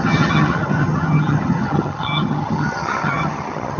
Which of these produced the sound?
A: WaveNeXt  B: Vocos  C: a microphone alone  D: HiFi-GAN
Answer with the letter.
D